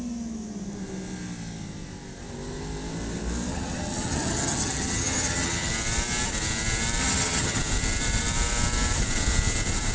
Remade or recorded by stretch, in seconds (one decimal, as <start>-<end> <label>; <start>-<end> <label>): 0.0-3.5 recorded; 3.5-5.7 remade; 5.7-7.0 recorded; 7.0-7.6 remade; 7.6-9.9 recorded